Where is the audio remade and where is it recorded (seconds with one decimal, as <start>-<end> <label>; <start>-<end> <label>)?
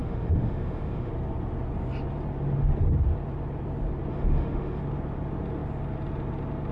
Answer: 0.0-1.1 remade; 1.1-4.1 recorded; 4.1-4.8 remade; 4.8-6.7 recorded